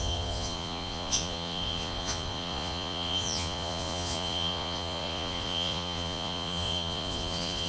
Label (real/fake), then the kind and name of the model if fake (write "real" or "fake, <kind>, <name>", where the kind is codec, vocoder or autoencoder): fake, vocoder, Vocos